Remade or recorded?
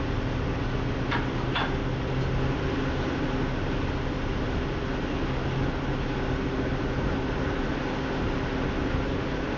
recorded